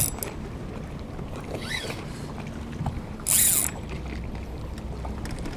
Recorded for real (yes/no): yes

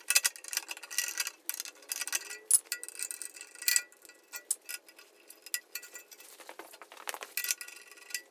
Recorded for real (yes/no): yes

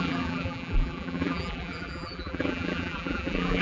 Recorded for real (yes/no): no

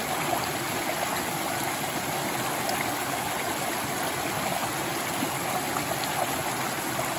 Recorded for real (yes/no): yes